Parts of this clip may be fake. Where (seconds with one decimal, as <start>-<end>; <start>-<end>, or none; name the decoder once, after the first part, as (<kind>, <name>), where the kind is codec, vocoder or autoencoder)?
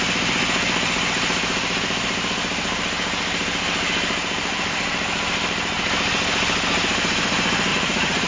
7.7-8.3 (vocoder, Vocos)